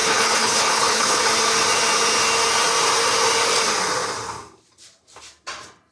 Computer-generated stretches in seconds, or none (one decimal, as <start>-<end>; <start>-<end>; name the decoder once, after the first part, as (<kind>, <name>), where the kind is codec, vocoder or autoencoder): 0.0-1.2 (codec, HILCodec)